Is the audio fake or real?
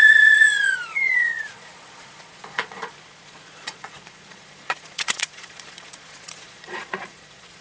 fake